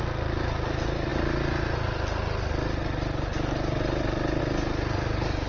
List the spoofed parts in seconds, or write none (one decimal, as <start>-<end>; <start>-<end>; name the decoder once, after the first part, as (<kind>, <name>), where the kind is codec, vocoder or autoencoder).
none